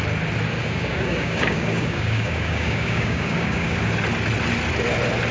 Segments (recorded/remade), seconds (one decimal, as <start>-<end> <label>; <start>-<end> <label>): 0.0-0.6 recorded; 0.6-3.8 remade; 3.8-5.3 recorded